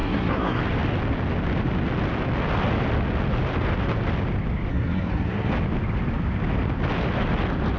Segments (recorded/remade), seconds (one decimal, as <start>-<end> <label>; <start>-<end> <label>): 0.0-0.6 remade; 0.6-4.7 recorded; 4.7-5.5 remade; 5.5-7.8 recorded